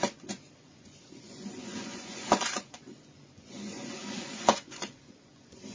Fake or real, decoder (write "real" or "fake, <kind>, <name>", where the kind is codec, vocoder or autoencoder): fake, vocoder, Vocos